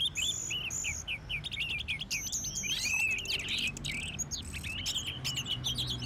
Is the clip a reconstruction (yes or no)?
no